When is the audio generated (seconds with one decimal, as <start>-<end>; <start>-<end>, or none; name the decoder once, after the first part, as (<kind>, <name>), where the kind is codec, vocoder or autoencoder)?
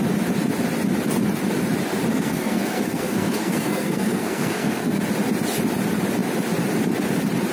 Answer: 2.1-5.0 (codec, SNAC)